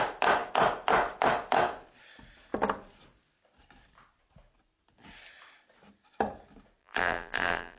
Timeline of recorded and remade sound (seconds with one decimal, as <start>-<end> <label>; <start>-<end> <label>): 0.0-6.8 recorded; 6.8-7.8 remade